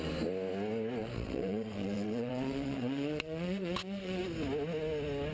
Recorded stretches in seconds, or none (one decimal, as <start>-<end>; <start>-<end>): 0.0-1.0; 4.2-5.3